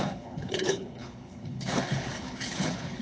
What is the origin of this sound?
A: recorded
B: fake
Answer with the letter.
B